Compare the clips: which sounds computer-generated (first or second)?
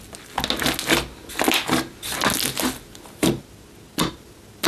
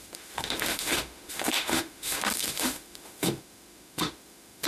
second